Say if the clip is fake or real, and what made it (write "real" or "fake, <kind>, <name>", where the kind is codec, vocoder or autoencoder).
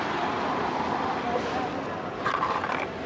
real